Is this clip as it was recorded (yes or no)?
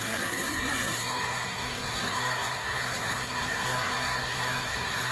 no